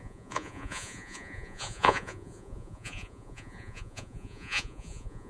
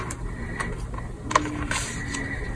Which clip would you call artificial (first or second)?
first